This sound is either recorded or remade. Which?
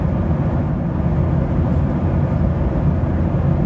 recorded